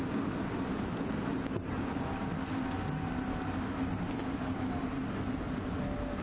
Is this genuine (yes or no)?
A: yes